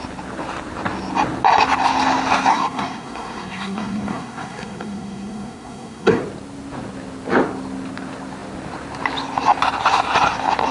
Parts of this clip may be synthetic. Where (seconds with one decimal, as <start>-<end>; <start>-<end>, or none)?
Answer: 2.5-6.2